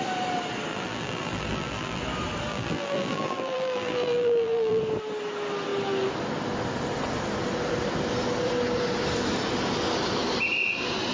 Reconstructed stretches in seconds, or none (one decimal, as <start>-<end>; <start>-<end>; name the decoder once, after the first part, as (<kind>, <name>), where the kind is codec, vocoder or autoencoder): 0.7-2.0 (vocoder, BigVGAN v2); 2.5-4.8

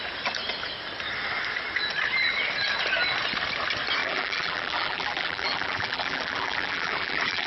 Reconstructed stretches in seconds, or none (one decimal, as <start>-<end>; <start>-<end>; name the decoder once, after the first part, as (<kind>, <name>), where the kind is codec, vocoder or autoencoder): 4.0-7.5 (vocoder, BigVGAN v2)